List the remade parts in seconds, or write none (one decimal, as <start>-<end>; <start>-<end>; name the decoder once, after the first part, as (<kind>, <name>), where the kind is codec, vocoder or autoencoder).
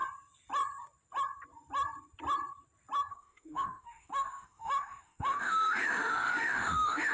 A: 3.1-7.1 (autoencoder, DAC-VAE)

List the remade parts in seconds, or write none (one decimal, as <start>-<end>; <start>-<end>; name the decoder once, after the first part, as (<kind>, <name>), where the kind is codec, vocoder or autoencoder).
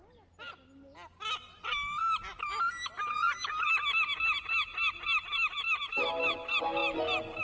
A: none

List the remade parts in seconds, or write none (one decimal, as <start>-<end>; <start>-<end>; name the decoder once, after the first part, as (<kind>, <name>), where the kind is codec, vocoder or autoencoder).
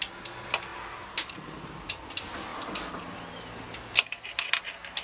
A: none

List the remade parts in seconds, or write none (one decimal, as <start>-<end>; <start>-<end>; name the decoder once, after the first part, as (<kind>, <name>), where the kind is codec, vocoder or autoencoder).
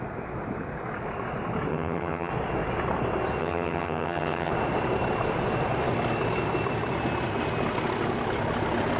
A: 1.7-2.3 (vocoder, HiFi-GAN); 3.4-4.5